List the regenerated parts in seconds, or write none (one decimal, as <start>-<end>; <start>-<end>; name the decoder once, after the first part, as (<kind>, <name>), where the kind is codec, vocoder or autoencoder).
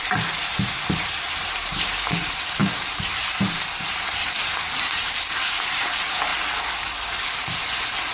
0.0-2.6 (vocoder, BigVGAN v2); 3.8-6.3; 6.8-8.1